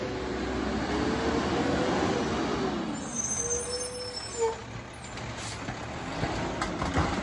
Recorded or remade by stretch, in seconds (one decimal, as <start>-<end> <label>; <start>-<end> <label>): 0.0-7.2 recorded